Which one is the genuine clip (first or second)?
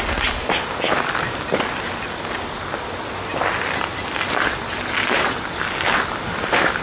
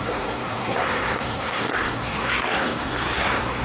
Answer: first